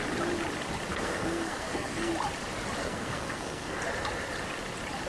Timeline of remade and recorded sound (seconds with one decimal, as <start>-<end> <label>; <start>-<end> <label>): 0.0-0.9 recorded; 0.9-2.1 remade; 2.1-2.8 recorded; 2.8-3.8 remade; 3.8-5.1 recorded

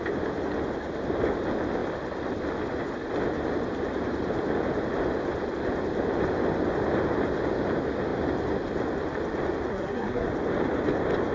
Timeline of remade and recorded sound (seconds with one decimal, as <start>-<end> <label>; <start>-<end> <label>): 0.0-9.7 recorded; 9.7-10.3 remade; 10.3-11.3 recorded

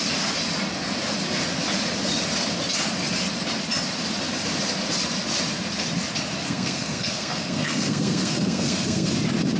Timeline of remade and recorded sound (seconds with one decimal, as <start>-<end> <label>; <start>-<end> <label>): 0.0-6.4 recorded; 6.4-9.1 remade; 9.1-9.6 recorded

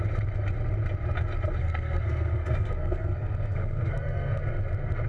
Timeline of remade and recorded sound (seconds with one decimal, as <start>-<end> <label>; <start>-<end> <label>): 0.0-1.6 recorded; 1.6-4.4 remade; 4.4-5.1 recorded

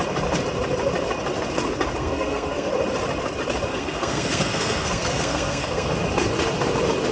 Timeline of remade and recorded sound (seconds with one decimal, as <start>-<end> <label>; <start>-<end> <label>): 0.0-2.0 recorded; 2.0-2.7 remade; 2.7-3.7 recorded; 3.7-5.9 remade; 5.9-7.1 recorded